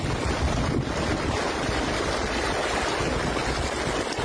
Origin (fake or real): real